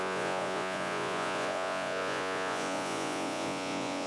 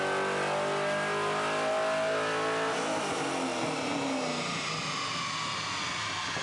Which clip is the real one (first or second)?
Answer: second